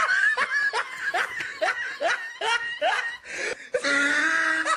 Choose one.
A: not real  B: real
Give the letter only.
B